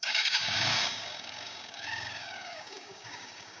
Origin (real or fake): fake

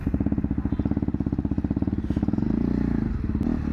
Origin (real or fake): real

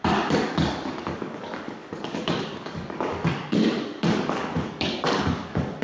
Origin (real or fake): fake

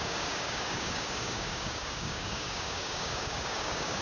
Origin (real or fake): fake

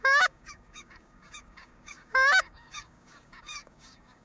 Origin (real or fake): fake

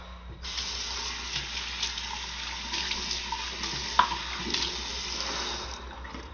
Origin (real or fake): real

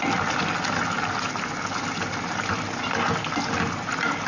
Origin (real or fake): real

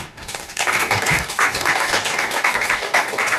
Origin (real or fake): fake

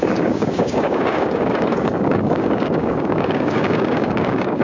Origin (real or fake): fake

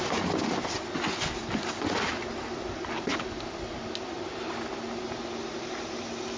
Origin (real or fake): real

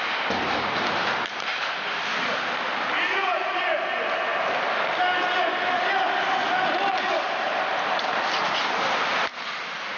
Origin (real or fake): real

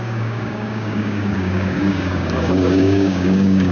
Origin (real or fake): fake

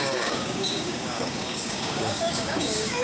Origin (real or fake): fake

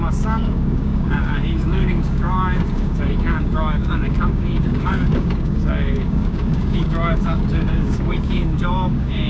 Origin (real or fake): fake